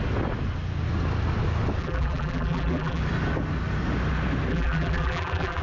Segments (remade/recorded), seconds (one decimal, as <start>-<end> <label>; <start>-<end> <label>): 0.0-1.8 recorded; 1.8-3.0 remade; 3.0-4.5 recorded; 4.5-5.6 remade